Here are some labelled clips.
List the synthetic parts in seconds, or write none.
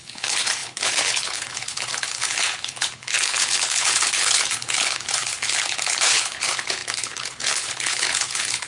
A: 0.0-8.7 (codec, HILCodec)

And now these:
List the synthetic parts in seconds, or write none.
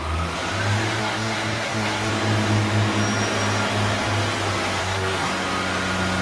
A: 1.0-2.1 (codec, SNAC); 4.8-5.3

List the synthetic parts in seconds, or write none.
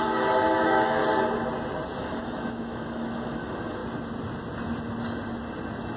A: 0.0-1.0 (autoencoder, DAC-VAE); 2.0-3.8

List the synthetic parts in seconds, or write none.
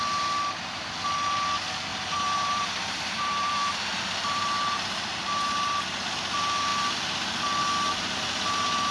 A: 1.9-5.1 (vocoder, BigVGAN v2)